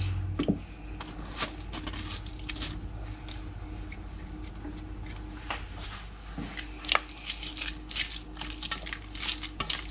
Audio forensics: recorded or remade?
recorded